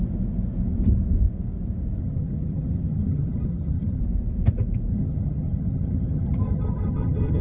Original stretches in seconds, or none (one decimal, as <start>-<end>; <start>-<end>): 0.0-2.0; 4.0-4.9